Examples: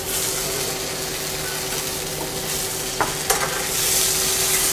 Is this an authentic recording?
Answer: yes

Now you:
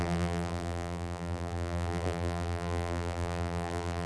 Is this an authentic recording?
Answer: no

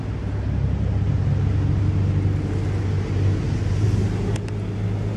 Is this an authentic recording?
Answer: yes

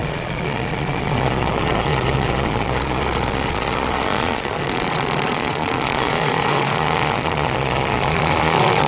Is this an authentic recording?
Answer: no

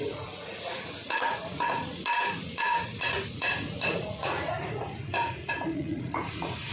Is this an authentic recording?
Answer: no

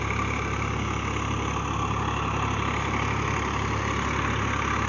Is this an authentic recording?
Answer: yes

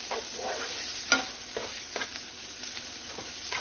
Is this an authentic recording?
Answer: yes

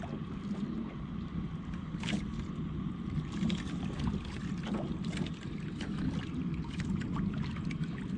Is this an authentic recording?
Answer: yes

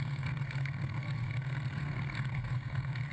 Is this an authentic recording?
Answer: no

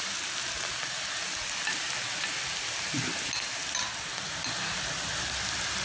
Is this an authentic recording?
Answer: yes